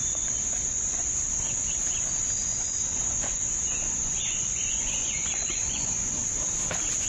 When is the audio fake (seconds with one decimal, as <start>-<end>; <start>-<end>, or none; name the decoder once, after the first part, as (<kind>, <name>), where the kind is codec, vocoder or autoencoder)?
0.0-1.2 (vocoder, Vocos); 2.5-6.1